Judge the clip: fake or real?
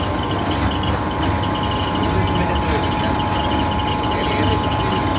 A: real